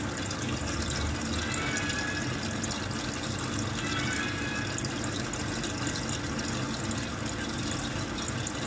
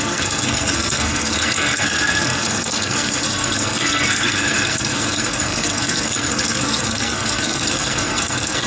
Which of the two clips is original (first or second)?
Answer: first